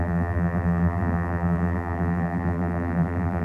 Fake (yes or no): yes